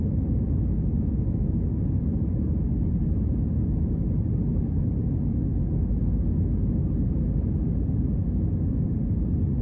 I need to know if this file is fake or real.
real